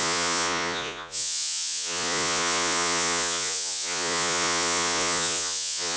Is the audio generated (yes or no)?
yes